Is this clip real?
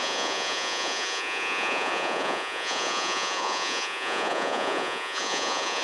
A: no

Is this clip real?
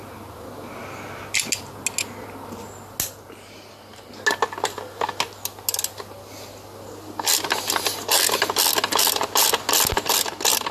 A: yes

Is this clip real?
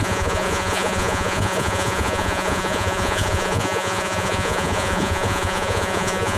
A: no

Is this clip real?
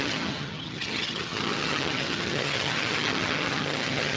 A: no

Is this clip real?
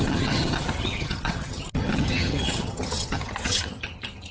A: no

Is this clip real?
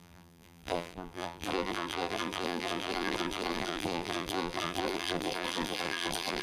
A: no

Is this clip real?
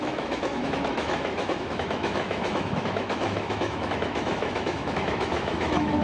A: no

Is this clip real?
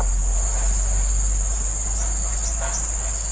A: yes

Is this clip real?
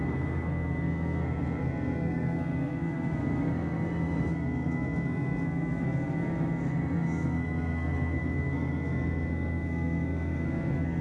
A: no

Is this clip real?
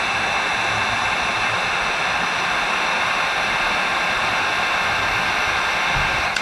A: yes